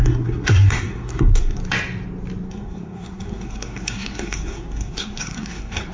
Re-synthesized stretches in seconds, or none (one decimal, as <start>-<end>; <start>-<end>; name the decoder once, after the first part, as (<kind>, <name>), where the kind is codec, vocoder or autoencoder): 0.0-1.6 (codec, SNAC); 2.5-5.9